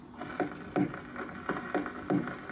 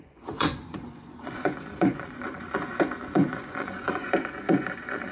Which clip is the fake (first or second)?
second